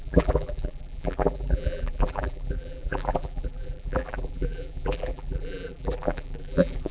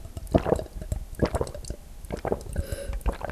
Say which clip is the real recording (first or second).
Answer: second